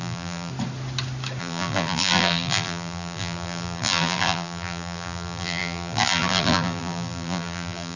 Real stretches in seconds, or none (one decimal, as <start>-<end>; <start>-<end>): 0.5-1.4